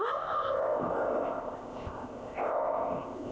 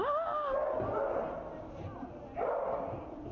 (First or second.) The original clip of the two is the second